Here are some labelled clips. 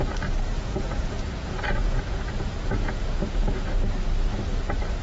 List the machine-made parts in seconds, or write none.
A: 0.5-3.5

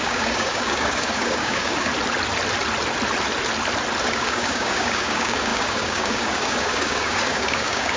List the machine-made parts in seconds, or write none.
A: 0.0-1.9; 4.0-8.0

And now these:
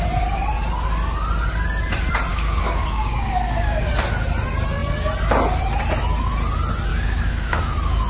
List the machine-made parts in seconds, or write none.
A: 2.3-3.9; 6.9-7.6

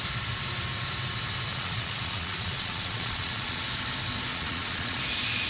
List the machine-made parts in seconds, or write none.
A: 1.5-3.6; 4.3-5.0

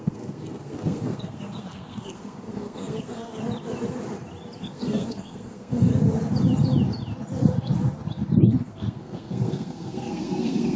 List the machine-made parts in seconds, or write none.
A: 0.0-3.3; 4.6-5.9; 8.4-10.8

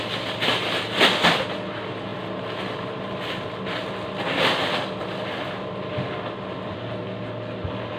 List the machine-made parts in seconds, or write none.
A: none